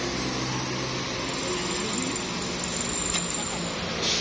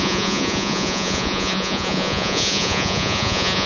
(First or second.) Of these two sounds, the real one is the first